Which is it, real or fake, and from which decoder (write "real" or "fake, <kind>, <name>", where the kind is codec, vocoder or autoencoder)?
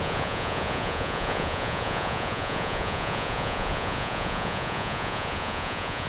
fake, vocoder, Vocos